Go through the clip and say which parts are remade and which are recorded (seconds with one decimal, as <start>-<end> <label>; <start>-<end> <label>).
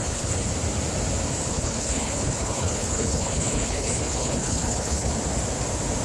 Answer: 0.0-0.5 remade; 0.5-1.5 recorded; 1.5-5.1 remade; 5.1-6.0 recorded